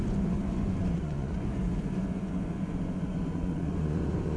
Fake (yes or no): yes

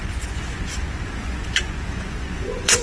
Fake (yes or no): yes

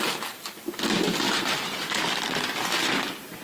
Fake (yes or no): no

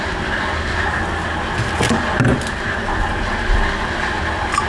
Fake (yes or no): no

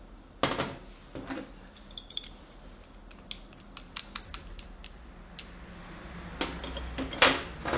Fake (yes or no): no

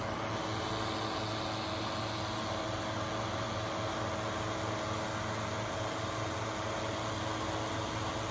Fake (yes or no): no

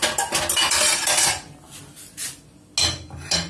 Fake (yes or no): no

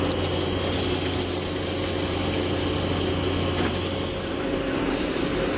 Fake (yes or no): no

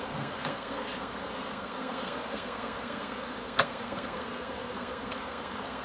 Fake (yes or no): yes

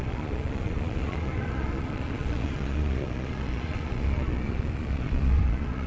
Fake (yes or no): yes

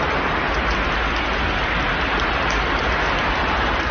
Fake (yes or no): no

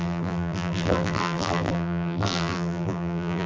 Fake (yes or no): yes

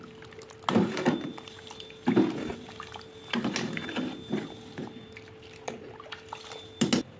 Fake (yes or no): no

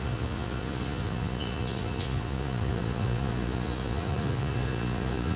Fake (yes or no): yes